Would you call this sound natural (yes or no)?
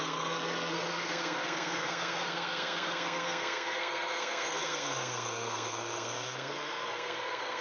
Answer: no